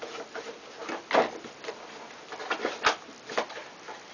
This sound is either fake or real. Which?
real